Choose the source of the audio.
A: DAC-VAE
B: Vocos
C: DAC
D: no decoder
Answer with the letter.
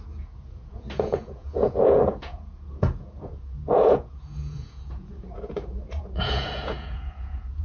B